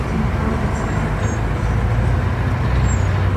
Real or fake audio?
real